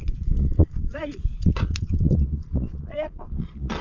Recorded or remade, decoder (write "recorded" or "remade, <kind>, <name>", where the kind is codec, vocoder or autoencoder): remade, vocoder, Vocos